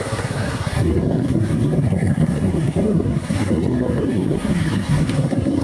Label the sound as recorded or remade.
remade